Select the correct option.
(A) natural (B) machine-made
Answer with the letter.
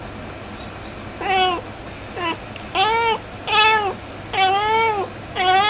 A